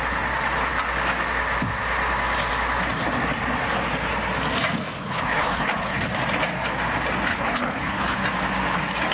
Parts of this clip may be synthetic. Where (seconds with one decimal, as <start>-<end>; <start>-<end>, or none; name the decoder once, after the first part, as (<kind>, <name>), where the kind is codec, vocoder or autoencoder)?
5.0-6.1 (codec, HILCodec); 7.3-8.2